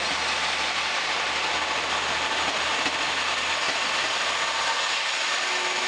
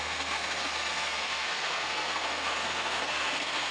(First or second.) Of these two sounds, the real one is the first